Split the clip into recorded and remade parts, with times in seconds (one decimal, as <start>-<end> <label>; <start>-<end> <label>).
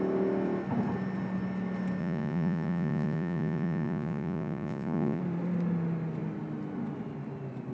0.0-2.0 recorded; 2.0-5.2 remade; 5.2-7.7 recorded